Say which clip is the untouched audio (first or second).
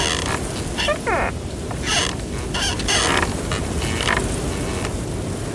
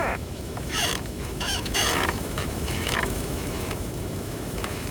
first